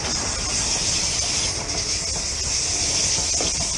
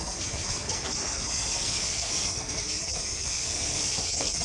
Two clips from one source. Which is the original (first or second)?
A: first